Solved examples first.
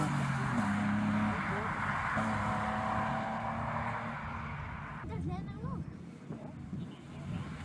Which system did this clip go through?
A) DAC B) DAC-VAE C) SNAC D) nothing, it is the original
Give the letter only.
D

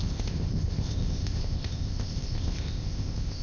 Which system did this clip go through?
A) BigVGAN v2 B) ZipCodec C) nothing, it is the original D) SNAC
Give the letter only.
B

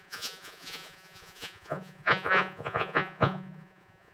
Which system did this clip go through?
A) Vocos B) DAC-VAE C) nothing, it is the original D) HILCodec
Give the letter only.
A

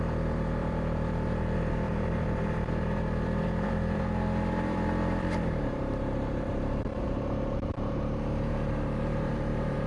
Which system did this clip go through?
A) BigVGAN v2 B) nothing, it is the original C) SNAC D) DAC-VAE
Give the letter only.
A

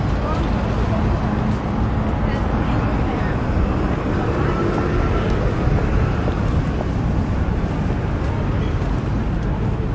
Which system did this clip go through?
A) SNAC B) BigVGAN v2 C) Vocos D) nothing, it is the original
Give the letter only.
D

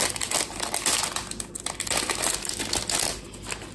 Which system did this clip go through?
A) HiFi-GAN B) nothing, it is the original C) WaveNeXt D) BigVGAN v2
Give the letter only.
B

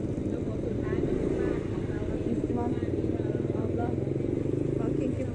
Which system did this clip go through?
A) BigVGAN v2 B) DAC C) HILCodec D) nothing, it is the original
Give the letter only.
D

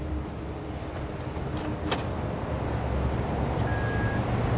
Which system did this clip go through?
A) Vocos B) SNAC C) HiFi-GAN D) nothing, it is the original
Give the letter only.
D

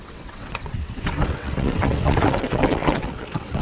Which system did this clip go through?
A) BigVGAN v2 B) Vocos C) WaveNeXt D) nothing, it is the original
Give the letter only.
C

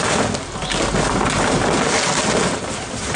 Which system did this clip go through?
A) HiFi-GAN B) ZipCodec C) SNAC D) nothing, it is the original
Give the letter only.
D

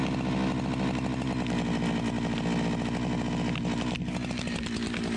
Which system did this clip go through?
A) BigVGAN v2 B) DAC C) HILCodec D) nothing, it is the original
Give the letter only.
D